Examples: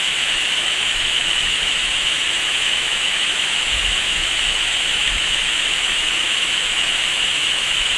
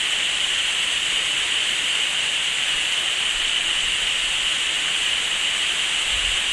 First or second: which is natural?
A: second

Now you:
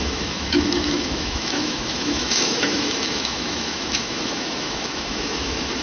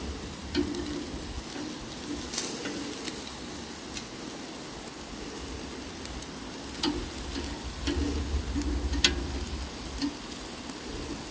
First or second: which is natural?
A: second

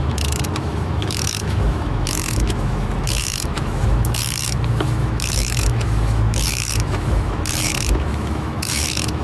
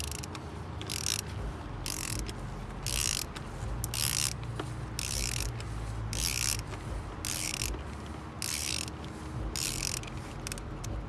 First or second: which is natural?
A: second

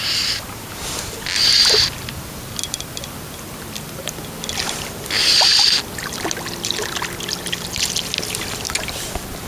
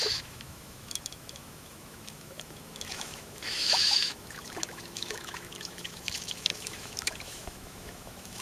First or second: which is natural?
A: first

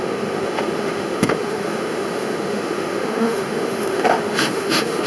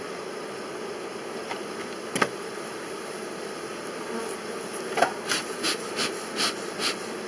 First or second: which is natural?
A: second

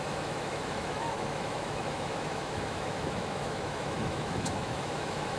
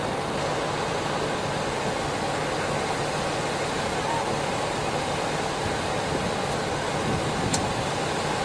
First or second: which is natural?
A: second